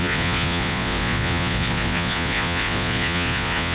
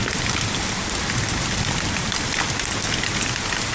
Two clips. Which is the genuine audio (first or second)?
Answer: second